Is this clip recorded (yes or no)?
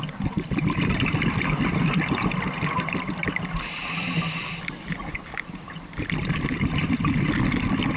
yes